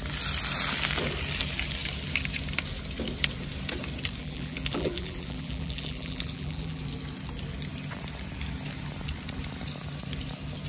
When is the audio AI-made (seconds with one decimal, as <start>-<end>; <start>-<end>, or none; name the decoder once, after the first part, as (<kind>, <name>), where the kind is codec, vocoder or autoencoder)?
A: 4.2-6.8 (vocoder, BigVGAN v2)